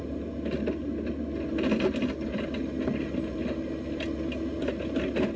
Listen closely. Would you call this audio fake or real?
real